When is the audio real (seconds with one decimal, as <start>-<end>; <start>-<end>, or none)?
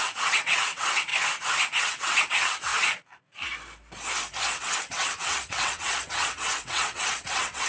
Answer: 1.1-1.8; 2.7-4.6